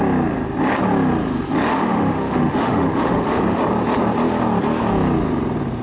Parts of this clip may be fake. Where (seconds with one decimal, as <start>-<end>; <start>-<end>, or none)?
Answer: 1.7-3.6

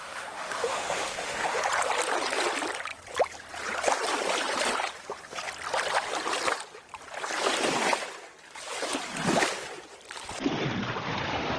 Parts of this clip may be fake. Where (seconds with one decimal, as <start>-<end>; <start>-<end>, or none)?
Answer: 0.0-1.6

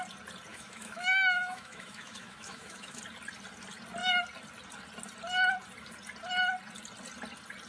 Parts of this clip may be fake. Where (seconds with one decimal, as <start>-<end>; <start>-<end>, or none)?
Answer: 0.5-3.0

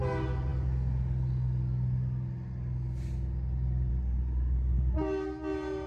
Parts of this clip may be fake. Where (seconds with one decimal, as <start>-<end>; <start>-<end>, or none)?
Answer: none